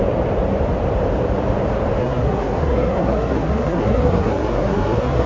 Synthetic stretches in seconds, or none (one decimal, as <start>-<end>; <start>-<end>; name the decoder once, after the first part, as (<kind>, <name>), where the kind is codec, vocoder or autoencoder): 2.0-5.3 (codec, SNAC)